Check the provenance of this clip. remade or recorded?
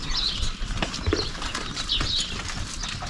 recorded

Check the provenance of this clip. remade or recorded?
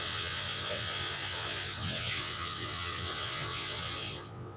remade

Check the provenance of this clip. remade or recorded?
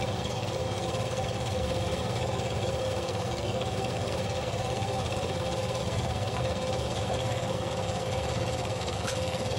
remade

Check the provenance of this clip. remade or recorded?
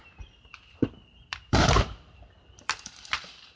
remade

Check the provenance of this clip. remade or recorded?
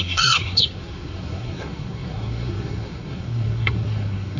remade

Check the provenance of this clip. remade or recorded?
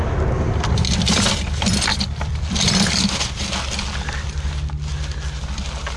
recorded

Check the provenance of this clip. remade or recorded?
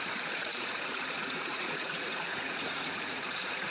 remade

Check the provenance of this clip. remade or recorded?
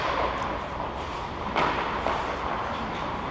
remade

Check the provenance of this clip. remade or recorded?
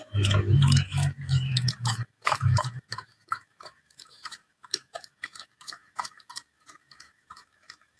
remade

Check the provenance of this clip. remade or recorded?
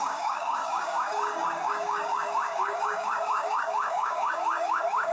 remade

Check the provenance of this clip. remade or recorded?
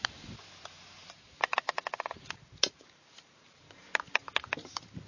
remade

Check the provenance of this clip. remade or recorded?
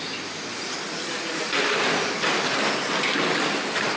recorded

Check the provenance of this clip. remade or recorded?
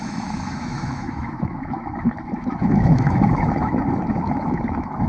remade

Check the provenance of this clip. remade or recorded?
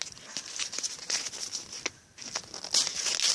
recorded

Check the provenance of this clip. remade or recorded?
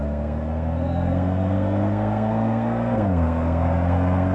remade